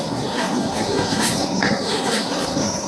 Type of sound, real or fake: fake